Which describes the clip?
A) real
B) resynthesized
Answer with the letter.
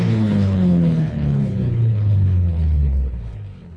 B